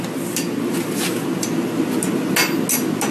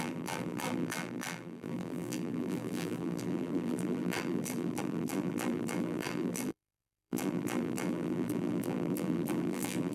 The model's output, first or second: second